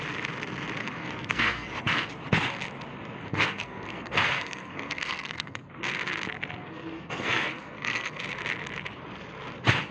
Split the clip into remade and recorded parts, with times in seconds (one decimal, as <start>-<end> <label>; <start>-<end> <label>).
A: 0.0-0.8 recorded; 0.8-2.1 remade; 2.1-3.3 recorded; 3.3-5.8 remade; 5.8-6.6 recorded; 6.6-8.2 remade; 8.2-9.9 recorded